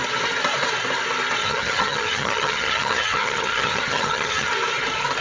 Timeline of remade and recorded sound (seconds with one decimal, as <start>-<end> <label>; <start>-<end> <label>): 0.0-1.4 recorded; 1.4-4.5 remade; 4.5-5.2 recorded